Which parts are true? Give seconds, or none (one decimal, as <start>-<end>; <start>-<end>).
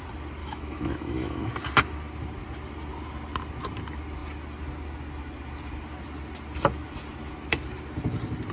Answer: 0.0-0.4; 1.5-8.5